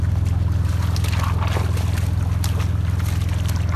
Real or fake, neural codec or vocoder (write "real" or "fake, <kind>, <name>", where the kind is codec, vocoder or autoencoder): real